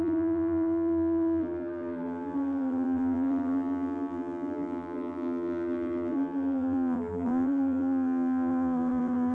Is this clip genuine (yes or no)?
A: no